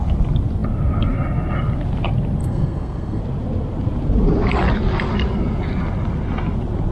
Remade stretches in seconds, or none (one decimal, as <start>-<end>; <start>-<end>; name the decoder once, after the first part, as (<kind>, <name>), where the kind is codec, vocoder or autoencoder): 2.4-3.2 (codec, SNAC)